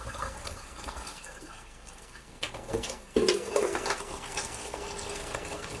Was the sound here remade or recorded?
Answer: remade